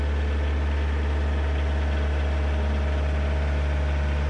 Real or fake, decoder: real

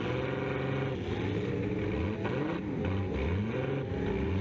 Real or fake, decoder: real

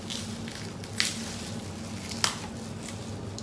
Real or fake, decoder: real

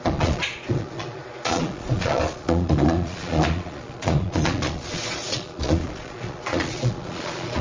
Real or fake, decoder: fake, vocoder, Vocos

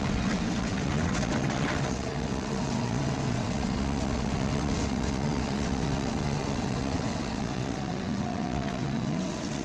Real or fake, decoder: fake, vocoder, WaveNeXt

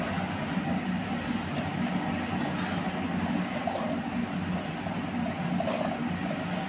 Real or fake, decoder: real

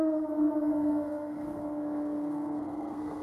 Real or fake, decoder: fake, codec, SNAC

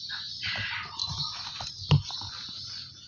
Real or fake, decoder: real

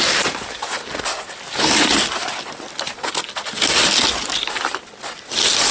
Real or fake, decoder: real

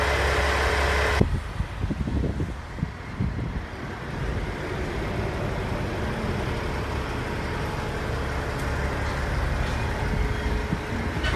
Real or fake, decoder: real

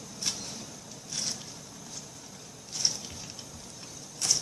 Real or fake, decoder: fake, vocoder, BigVGAN v2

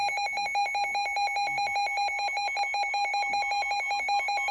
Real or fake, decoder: real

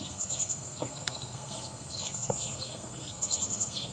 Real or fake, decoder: fake, codec, SNAC